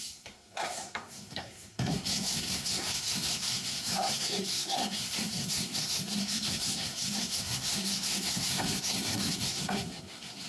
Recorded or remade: remade